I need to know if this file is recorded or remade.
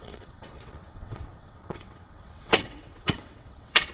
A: remade